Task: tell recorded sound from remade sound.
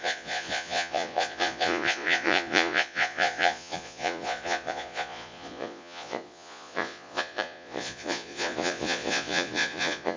remade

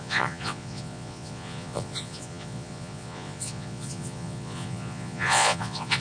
remade